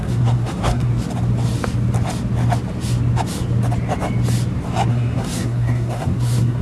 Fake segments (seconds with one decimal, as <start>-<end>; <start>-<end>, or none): 0.0-0.9; 4.9-6.6